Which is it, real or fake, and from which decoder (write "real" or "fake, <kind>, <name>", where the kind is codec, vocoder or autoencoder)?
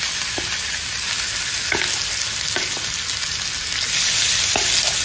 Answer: real